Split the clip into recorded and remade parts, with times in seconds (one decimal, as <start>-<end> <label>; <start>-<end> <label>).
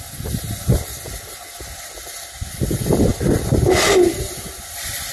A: 0.0-5.1 recorded